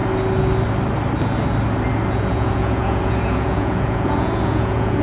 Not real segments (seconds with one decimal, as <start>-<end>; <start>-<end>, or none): 2.1-5.0

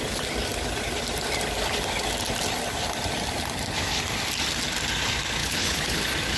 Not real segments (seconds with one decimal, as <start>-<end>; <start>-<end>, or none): 5.4-6.0